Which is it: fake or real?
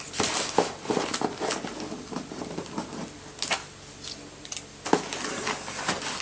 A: real